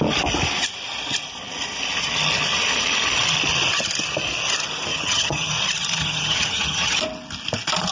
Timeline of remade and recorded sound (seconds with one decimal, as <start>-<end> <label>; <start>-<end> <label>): 0.0-4.9 recorded; 4.9-5.5 remade; 5.5-6.0 recorded; 6.0-7.0 remade; 7.0-7.9 recorded